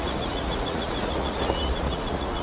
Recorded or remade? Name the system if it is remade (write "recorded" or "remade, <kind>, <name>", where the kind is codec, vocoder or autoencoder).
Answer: remade, vocoder, Vocos